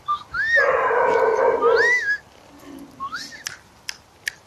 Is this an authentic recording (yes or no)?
yes